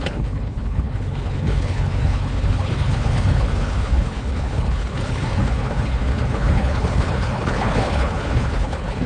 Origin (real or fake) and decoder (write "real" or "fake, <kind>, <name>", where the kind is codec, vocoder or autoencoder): fake, codec, HILCodec